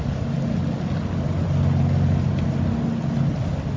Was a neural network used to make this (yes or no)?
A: no